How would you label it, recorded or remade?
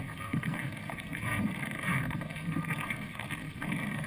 remade